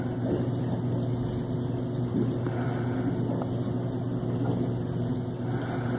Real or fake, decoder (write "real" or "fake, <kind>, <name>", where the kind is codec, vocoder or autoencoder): real